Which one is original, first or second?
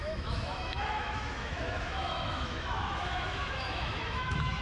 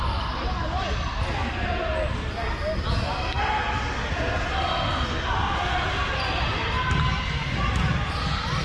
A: second